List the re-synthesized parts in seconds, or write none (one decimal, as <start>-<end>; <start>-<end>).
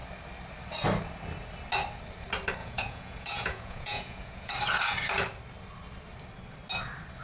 2.6-4.5